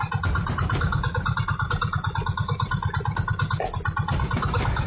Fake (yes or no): no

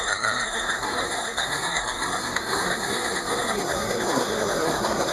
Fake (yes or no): yes